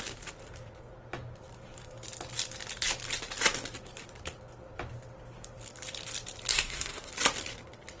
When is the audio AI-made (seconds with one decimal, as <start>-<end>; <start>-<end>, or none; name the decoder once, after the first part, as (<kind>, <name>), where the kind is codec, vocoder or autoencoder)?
6.5-7.1 (codec, SNAC)